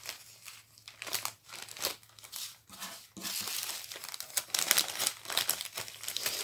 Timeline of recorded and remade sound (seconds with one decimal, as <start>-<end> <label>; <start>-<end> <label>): 0.0-6.4 recorded